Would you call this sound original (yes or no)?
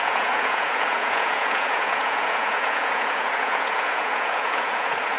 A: no